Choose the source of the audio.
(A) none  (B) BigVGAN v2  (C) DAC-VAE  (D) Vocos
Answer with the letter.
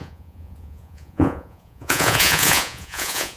D